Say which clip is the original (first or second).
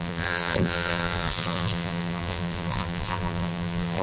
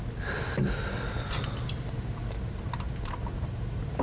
second